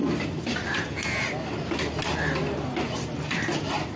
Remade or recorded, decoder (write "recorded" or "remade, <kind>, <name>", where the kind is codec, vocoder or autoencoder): recorded